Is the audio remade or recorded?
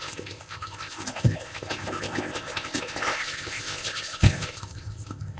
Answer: remade